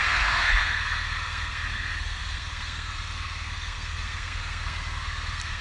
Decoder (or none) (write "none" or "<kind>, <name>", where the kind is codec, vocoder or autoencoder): codec, SNAC